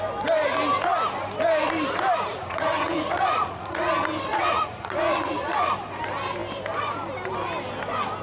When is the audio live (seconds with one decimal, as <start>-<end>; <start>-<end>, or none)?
0.0-2.3; 3.9-4.3; 5.7-8.2

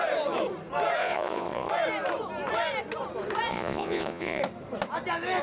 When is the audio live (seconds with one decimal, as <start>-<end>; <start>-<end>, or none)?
0.0-1.0; 1.7-3.5; 4.4-5.4